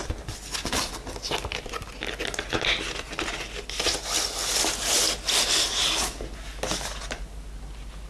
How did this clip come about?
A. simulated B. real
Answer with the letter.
B